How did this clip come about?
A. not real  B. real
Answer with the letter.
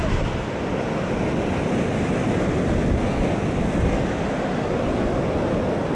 B